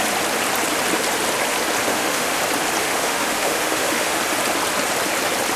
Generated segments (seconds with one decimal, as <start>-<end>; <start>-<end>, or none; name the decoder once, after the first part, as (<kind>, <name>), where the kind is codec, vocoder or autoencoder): 1.9-2.4 (autoencoder, DAC-VAE); 2.8-4.2